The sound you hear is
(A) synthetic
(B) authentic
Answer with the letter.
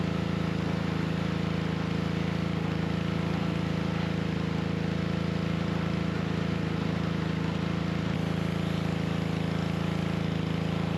B